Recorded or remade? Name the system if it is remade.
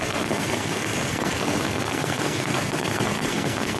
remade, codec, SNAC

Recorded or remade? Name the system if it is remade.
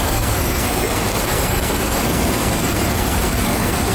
remade, codec, SNAC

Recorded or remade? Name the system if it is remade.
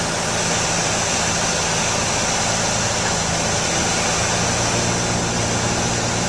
recorded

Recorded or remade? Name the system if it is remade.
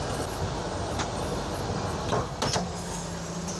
recorded